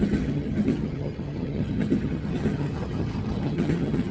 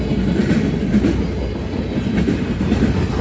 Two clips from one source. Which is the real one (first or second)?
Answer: second